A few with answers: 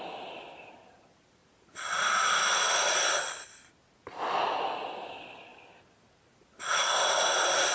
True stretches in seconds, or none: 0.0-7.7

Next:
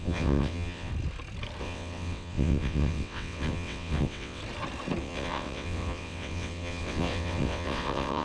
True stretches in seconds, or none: 0.9-1.6; 4.4-5.0

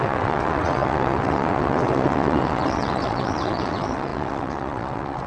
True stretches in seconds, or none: none

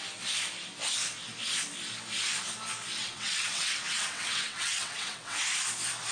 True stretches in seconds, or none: 0.0-3.0; 5.4-6.1

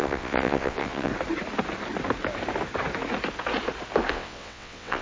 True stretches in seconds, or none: 1.1-4.1

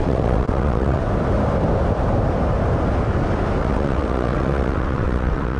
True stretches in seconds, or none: 1.0-3.6

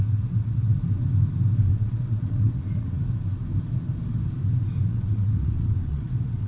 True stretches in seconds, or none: 0.8-1.7; 3.0-4.9